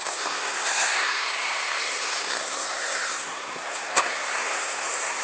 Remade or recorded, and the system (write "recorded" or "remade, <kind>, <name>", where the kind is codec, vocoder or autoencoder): remade, codec, SNAC